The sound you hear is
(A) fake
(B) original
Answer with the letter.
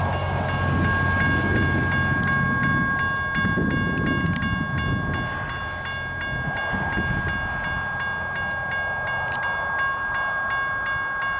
B